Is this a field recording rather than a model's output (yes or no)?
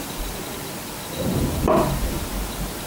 yes